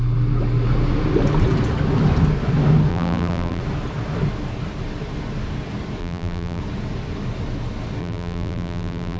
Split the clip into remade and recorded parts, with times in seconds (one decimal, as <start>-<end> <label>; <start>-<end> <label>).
0.0-2.9 recorded; 2.9-3.6 remade; 3.6-6.0 recorded; 6.0-6.6 remade; 6.6-8.0 recorded; 8.0-9.2 remade